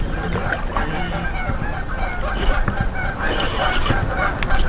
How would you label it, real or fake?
real